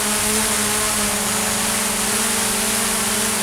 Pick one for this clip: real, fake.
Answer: real